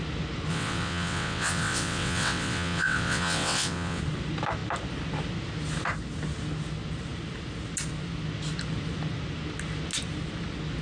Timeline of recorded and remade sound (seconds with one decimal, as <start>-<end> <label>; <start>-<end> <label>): 0.0-0.5 recorded; 0.5-4.0 remade; 4.0-10.8 recorded